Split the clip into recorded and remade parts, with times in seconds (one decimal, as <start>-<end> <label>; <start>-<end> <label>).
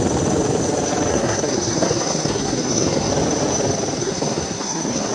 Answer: 0.0-1.1 recorded; 1.1-3.1 remade; 3.1-4.0 recorded; 4.0-5.1 remade